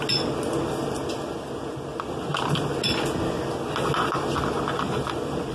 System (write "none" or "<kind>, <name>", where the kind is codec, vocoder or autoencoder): none